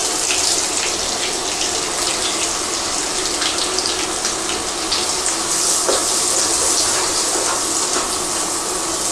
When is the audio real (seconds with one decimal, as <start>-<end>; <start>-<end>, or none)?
0.0-9.1